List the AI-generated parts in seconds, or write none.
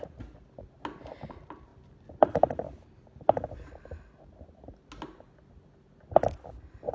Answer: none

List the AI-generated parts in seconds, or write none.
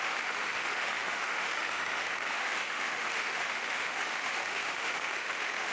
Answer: 0.0-5.7 (autoencoder, DAC-VAE)